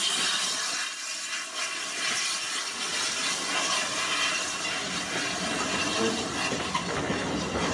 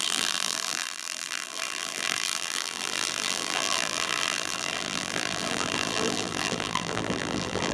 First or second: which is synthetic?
second